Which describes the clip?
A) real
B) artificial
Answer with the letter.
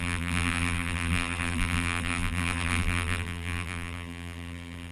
B